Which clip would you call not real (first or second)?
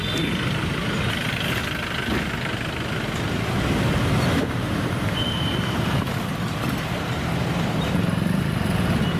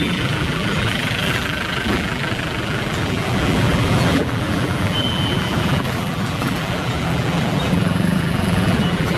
second